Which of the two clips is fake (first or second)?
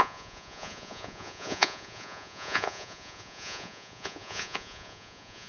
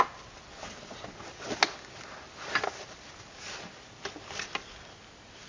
first